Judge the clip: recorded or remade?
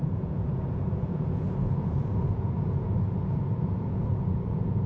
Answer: remade